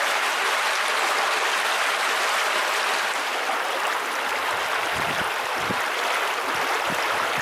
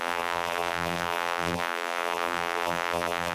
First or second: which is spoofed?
second